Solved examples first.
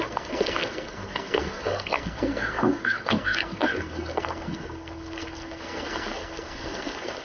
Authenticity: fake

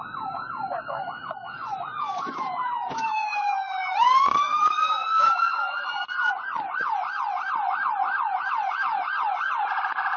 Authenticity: fake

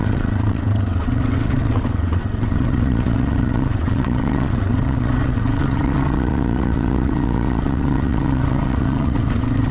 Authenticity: fake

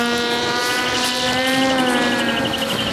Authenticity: real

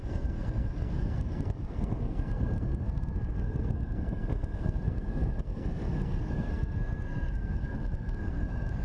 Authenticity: fake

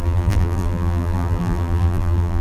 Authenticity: fake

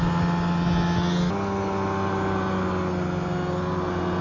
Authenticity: real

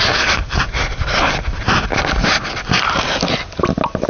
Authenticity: real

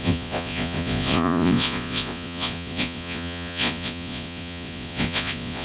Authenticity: fake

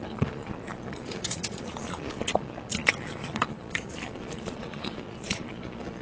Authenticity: fake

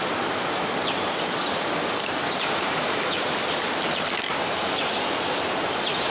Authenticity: fake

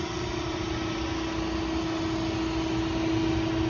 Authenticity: real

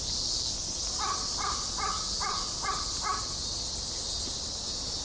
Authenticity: real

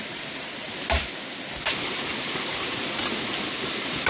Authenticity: real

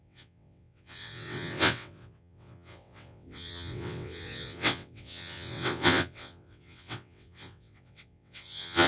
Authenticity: fake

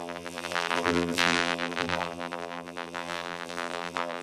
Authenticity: fake